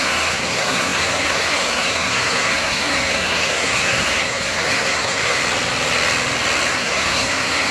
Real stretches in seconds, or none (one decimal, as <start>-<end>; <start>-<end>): 5.4-6.7